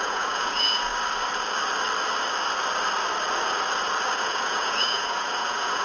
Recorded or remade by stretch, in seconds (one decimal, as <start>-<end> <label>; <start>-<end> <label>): 0.0-0.9 remade; 0.9-4.2 recorded; 4.2-5.8 remade